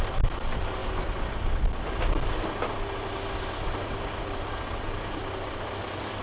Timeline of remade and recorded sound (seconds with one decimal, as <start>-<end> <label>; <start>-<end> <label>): 0.0-6.2 recorded